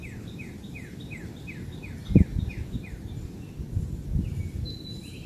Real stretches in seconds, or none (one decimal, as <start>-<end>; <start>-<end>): 0.0-5.3